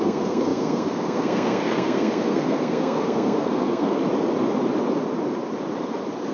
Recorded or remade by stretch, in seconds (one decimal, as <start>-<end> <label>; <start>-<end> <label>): 0.0-4.0 remade; 4.0-6.3 recorded